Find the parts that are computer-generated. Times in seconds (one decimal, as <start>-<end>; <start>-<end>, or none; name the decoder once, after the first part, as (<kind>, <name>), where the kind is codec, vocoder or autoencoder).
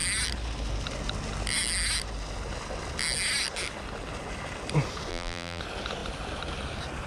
5.1-5.6 (vocoder, BigVGAN v2)